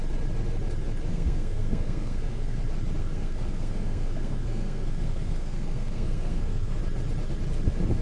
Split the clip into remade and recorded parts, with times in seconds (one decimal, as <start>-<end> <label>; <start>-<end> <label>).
0.0-1.1 recorded; 1.1-2.6 remade; 2.6-3.0 recorded; 3.0-6.8 remade; 6.8-8.0 recorded